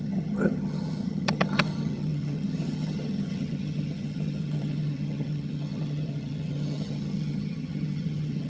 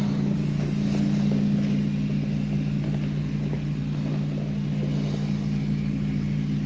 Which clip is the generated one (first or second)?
first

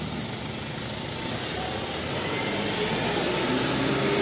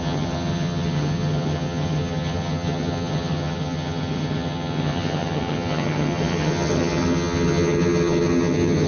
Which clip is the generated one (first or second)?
second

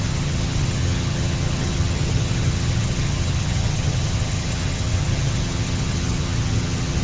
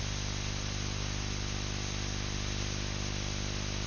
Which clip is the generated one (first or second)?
first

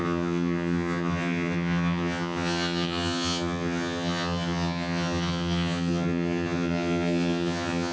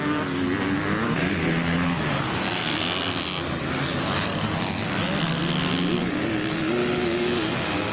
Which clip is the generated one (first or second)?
first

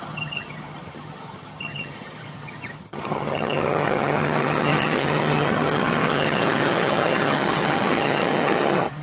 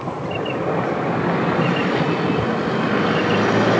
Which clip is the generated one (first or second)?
first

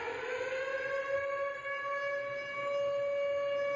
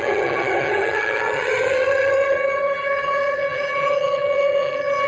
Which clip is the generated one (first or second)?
second